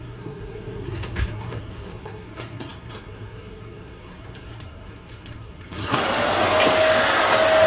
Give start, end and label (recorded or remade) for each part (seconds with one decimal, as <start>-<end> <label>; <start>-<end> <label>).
0.0-6.0 remade; 6.0-7.7 recorded